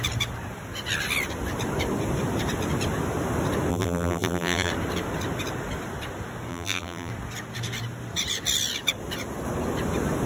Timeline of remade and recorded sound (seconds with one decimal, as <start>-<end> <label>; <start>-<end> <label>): 0.0-3.7 recorded; 3.7-4.7 remade; 4.7-6.5 recorded; 6.5-7.1 remade; 7.1-10.3 recorded